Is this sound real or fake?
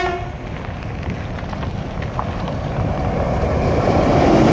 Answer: real